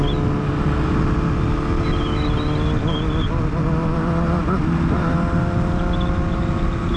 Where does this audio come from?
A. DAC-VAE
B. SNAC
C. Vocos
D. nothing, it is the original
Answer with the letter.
D